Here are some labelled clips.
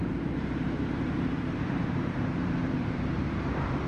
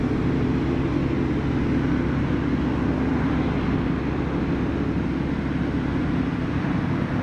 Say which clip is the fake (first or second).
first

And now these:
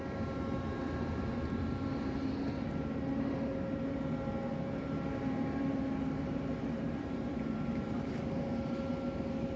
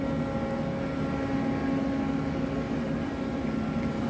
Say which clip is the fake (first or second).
first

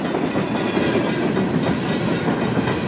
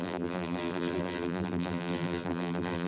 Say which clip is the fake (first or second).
second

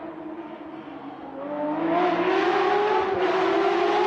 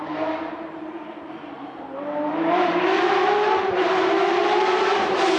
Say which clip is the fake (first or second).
second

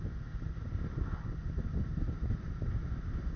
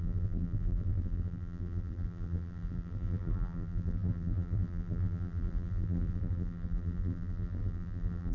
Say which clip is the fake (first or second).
second